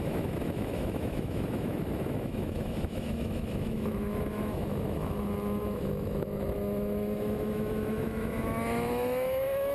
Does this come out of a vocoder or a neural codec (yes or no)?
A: yes